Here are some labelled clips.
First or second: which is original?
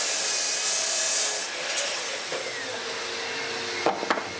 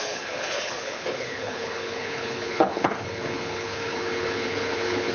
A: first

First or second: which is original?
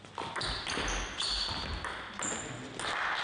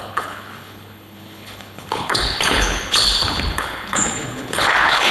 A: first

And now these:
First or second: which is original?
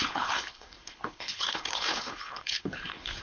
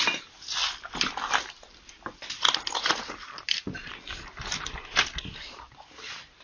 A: second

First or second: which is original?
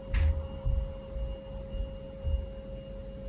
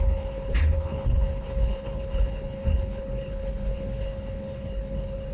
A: first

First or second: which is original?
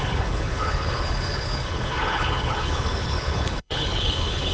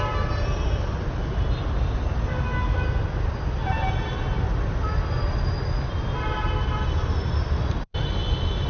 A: second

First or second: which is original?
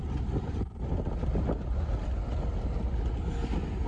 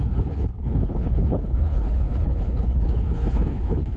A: first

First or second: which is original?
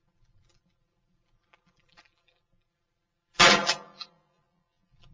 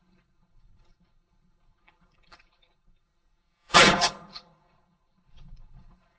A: first